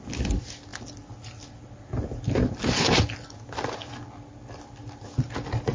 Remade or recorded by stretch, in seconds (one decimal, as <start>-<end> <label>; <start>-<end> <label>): 0.0-5.7 recorded